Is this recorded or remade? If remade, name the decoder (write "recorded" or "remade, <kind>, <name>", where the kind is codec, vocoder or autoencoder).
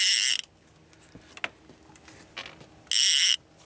recorded